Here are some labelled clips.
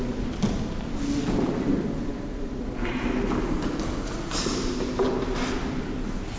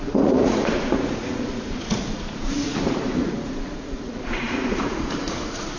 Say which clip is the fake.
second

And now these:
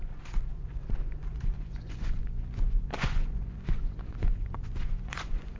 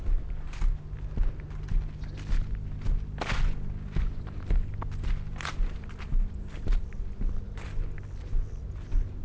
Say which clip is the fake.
first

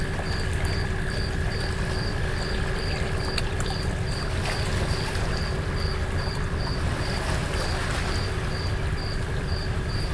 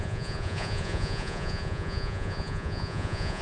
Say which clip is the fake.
second